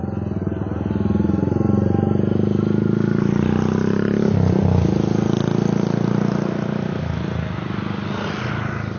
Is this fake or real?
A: real